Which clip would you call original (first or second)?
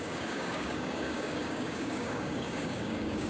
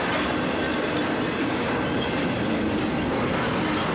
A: second